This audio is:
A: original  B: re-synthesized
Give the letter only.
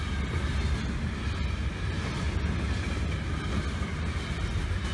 A